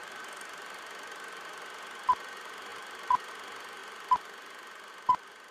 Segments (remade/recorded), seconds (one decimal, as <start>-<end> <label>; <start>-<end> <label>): 0.0-0.8 remade; 0.8-2.7 recorded; 2.7-3.3 remade; 3.3-5.5 recorded